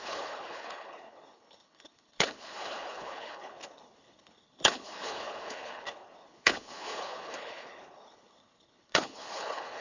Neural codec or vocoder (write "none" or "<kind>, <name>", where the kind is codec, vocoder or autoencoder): codec, HILCodec